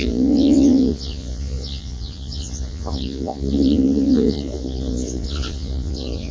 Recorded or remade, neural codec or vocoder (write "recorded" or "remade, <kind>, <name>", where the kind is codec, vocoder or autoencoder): remade, vocoder, Vocos